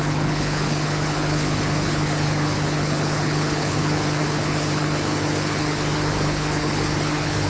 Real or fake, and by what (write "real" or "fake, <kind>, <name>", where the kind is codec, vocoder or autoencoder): fake, codec, HILCodec